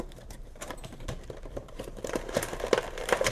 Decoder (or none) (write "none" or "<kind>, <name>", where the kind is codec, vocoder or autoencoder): vocoder, BigVGAN v2